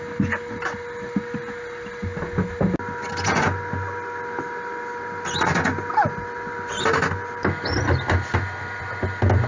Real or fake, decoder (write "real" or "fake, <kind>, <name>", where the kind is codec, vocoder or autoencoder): real